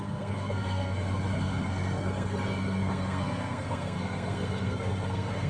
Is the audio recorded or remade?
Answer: remade